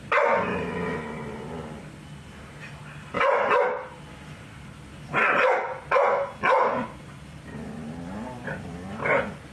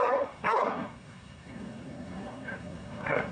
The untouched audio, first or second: first